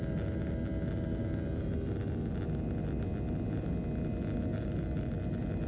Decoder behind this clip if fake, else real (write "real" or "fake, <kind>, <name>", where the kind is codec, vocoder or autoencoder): real